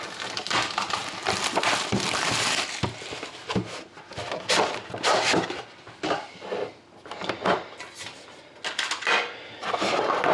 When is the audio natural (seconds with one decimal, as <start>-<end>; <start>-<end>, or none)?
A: 0.0-1.0; 2.5-3.4; 6.8-10.3

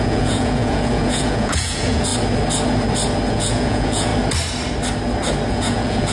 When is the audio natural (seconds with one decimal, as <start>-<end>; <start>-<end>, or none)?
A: 2.1-3.3; 4.1-5.5